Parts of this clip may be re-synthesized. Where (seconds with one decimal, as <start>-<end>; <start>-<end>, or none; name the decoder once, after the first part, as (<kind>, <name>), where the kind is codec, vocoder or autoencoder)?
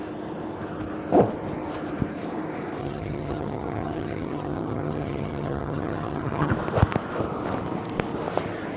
2.8-6.5 (vocoder, HiFi-GAN)